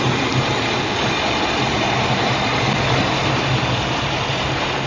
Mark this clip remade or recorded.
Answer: recorded